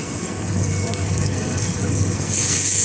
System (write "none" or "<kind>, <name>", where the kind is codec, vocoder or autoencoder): codec, SNAC